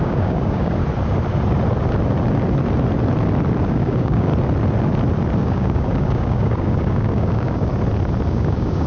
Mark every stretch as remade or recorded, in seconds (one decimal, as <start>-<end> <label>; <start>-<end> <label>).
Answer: 0.0-0.8 remade; 0.8-3.7 recorded; 3.7-4.3 remade; 4.3-5.4 recorded; 5.4-7.7 remade; 7.7-8.3 recorded; 8.3-8.9 remade